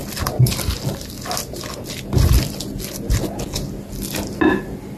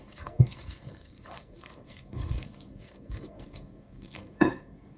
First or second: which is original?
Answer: first